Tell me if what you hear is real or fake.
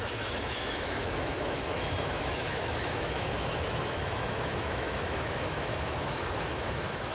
fake